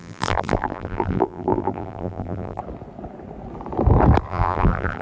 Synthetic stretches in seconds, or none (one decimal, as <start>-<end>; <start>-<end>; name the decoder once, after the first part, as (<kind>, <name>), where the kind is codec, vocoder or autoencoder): 0.0-2.6 (vocoder, BigVGAN v2); 4.3-5.0